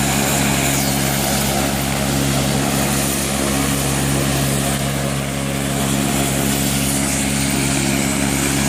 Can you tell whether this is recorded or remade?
remade